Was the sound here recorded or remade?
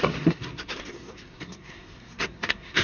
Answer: remade